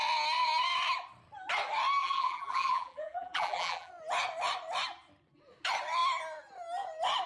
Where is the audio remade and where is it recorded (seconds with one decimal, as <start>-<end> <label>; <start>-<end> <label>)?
0.0-2.0 recorded; 2.0-3.9 remade; 3.9-7.3 recorded